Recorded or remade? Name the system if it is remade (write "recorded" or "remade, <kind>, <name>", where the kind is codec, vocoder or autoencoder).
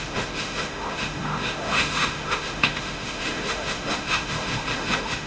remade, autoencoder, DAC-VAE